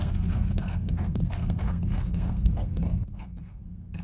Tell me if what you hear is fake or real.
fake